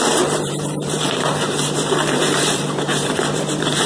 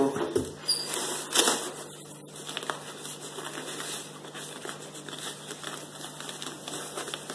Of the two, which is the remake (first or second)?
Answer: first